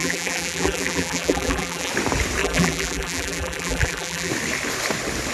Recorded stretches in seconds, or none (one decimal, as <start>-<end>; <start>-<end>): 1.9-2.4; 4.3-5.3